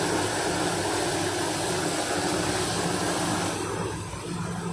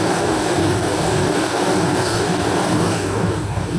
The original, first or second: first